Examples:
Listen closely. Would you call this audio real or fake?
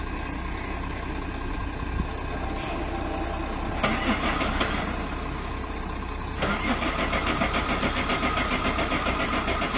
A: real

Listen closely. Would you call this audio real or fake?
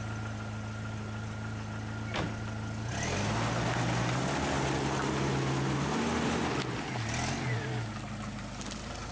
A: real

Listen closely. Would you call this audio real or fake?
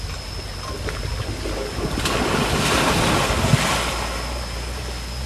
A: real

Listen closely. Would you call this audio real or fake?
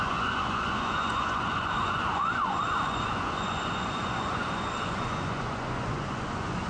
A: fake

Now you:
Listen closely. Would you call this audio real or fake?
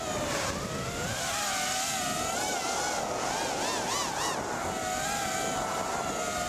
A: real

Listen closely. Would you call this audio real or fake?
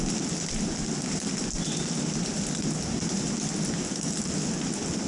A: real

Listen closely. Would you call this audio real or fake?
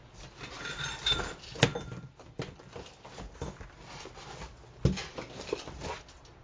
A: real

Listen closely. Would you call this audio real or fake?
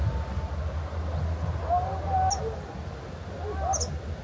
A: real